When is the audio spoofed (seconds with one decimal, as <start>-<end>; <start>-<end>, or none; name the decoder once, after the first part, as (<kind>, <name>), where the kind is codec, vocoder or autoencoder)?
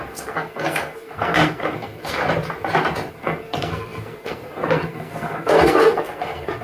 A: 0.0-2.2 (codec, SNAC); 3.1-6.6